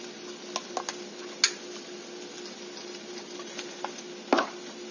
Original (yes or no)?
yes